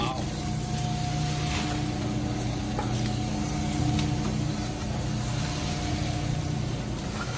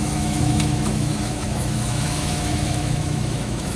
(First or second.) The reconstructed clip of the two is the second